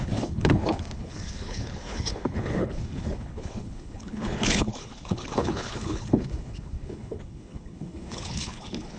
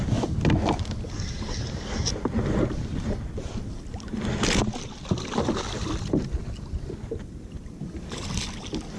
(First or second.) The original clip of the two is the second